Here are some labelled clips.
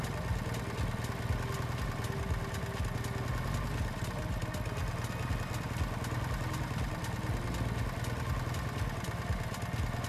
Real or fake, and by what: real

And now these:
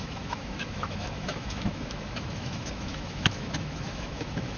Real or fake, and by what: fake, autoencoder, DAC-VAE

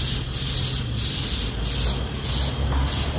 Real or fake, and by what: real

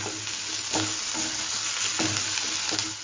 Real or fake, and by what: real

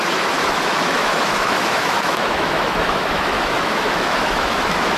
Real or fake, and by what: fake, autoencoder, DAC-VAE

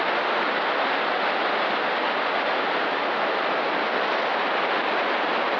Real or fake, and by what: real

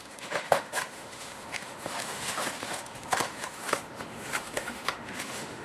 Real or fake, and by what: fake, autoencoder, DAC-VAE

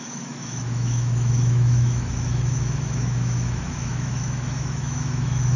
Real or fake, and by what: fake, autoencoder, DAC-VAE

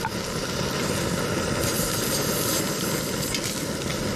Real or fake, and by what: real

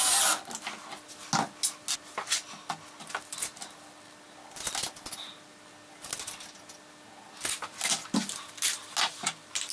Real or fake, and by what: real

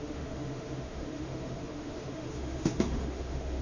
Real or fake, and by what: fake, autoencoder, DAC-VAE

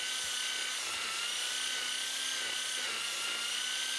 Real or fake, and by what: real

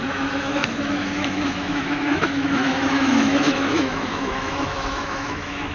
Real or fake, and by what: fake, autoencoder, DAC-VAE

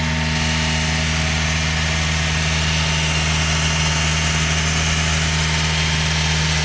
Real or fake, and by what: real